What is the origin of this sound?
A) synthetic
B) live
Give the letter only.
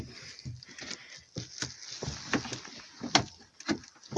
B